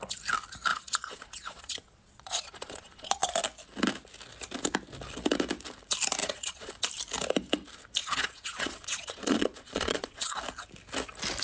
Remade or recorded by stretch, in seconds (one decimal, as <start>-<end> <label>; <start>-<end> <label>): 0.0-0.7 recorded; 0.7-3.3 remade; 3.3-6.2 recorded; 6.2-6.7 remade; 6.7-8.0 recorded; 8.0-10.4 remade; 10.4-11.4 recorded